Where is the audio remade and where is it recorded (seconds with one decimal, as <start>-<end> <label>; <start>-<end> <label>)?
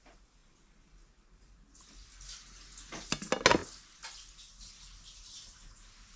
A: 0.0-6.2 recorded